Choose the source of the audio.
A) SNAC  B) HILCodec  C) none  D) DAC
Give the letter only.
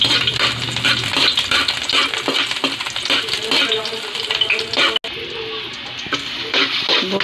C